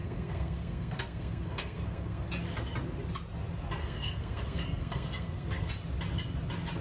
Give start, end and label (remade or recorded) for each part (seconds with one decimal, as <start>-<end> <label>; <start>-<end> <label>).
0.0-2.3 remade; 2.3-3.8 recorded; 3.8-5.7 remade; 5.7-6.8 recorded